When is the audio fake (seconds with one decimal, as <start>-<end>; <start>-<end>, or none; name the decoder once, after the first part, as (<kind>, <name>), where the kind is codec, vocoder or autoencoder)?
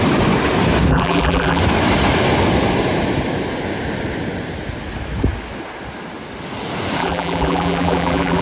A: 0.9-1.6 (vocoder, BigVGAN v2); 7.0-8.4